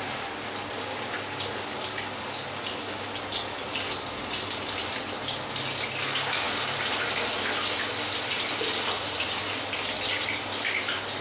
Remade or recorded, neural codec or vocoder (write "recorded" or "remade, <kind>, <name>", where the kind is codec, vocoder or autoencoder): recorded